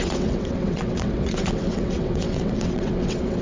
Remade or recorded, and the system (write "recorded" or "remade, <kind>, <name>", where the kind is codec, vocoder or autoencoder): remade, vocoder, WaveNeXt